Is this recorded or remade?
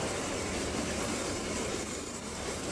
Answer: remade